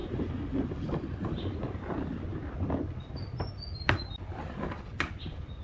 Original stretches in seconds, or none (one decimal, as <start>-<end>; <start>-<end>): 0.0-5.6